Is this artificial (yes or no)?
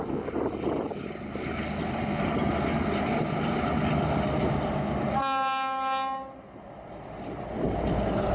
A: no